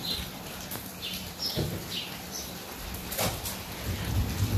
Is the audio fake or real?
real